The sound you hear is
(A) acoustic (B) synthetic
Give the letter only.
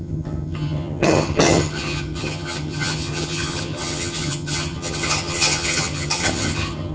B